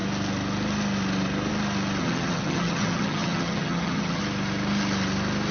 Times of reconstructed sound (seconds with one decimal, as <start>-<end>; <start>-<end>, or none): 2.0-4.2